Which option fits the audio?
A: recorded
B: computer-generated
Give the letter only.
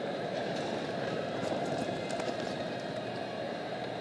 B